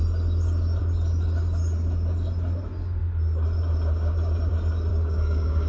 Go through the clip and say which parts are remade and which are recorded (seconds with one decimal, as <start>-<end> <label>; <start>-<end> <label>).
0.0-4.9 recorded; 4.9-5.7 remade